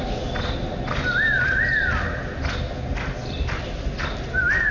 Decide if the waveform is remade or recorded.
recorded